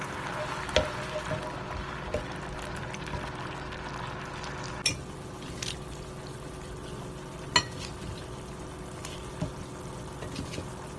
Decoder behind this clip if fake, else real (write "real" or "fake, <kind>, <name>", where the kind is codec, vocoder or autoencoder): real